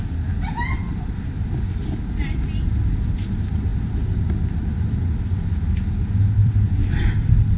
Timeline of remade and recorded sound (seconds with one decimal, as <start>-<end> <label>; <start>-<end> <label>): 0.0-6.4 recorded; 6.4-7.0 remade; 7.0-7.6 recorded

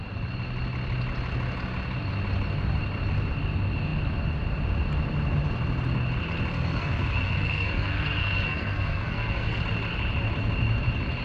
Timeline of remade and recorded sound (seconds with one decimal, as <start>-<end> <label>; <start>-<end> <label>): 0.0-6.5 recorded; 6.5-9.6 remade; 9.6-11.2 recorded